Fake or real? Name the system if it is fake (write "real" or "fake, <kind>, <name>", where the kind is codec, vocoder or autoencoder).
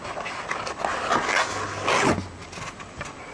real